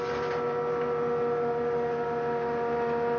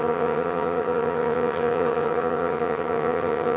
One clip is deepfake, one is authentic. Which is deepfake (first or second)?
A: second